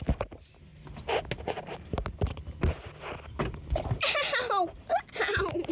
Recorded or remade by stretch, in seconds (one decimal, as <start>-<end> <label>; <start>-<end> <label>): 0.0-5.7 recorded